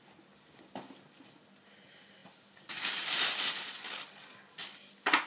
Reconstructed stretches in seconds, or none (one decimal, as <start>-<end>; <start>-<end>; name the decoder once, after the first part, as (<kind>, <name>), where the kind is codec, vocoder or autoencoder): none